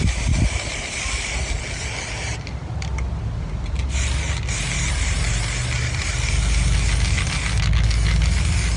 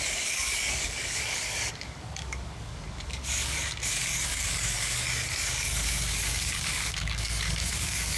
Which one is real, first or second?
first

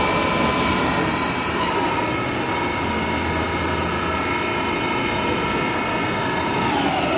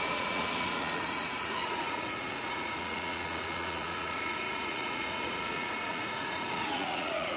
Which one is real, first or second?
first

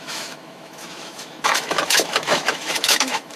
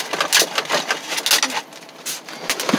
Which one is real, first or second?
second